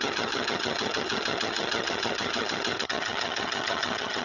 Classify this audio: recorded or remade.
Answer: remade